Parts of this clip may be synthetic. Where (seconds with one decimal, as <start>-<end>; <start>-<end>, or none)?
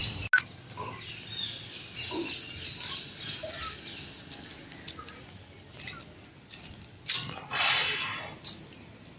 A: none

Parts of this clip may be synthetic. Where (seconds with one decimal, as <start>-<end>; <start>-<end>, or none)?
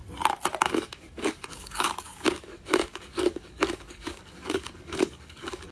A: 0.6-5.7